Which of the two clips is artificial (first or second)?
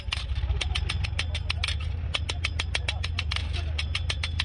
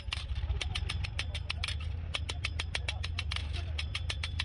second